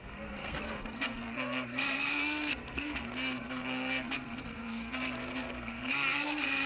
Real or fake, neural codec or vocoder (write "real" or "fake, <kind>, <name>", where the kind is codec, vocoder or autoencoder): fake, codec, SNAC